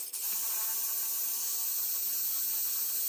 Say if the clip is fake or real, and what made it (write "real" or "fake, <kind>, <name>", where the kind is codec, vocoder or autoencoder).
real